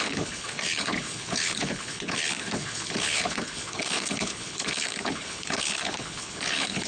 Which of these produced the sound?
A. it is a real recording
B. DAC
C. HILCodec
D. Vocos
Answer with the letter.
C